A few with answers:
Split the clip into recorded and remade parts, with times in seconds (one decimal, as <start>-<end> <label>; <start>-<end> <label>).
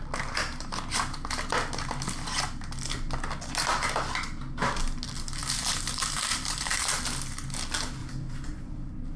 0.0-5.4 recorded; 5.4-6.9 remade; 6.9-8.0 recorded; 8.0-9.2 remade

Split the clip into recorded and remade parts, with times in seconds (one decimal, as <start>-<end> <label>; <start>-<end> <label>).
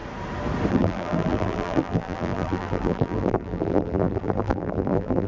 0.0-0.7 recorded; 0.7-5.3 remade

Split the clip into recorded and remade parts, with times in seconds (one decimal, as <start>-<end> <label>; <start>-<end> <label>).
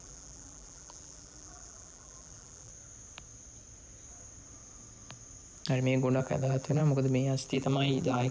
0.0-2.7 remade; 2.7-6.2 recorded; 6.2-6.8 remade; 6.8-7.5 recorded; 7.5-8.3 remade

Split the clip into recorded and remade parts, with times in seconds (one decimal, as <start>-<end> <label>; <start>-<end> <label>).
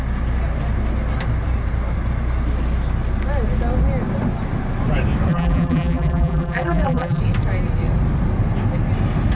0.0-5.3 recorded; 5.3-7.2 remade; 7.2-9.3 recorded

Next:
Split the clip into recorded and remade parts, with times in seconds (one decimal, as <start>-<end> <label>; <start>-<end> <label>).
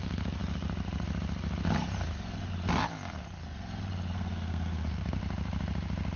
0.0-0.4 remade; 0.4-4.1 recorded; 4.1-5.2 remade; 5.2-6.2 recorded